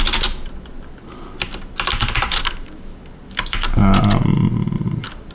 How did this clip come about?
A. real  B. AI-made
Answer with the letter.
A